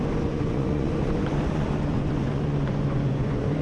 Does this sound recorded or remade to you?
remade